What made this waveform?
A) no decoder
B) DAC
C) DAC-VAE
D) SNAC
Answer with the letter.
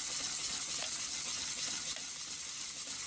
A